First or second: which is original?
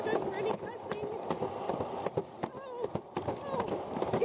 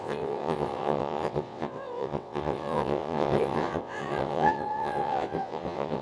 first